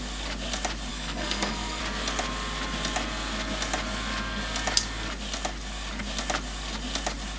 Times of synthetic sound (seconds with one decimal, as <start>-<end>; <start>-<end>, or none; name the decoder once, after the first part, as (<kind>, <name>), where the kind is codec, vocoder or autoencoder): 0.9-1.8 (codec, SNAC)